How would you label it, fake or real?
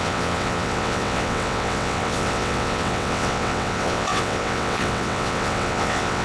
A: fake